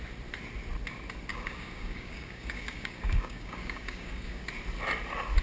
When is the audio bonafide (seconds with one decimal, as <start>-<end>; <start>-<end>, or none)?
0.0-1.3; 4.5-5.4

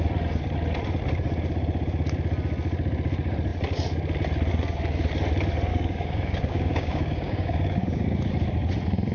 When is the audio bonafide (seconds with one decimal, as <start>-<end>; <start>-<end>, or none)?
0.0-5.7; 8.3-9.1

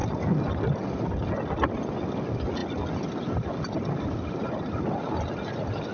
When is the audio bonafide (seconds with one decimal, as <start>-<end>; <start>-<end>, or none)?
0.0-5.9

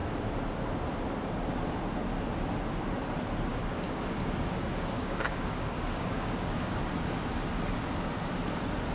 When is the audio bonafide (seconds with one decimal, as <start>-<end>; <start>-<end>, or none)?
0.0-3.5; 6.8-8.9

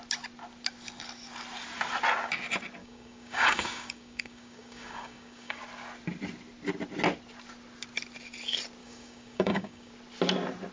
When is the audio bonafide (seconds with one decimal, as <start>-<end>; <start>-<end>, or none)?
0.0-2.8; 5.6-8.8; 9.9-10.7

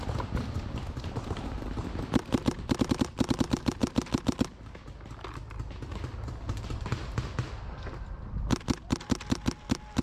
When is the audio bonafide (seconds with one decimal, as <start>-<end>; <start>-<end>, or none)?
0.0-10.0